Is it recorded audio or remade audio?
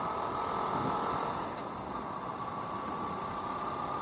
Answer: recorded